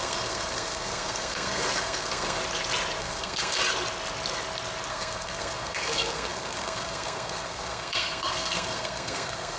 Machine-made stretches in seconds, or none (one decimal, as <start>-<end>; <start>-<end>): 0.0-2.4; 3.0-3.6; 4.9-9.6